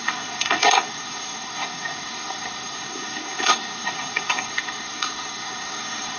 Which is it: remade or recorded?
remade